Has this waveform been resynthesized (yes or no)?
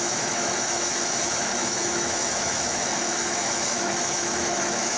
yes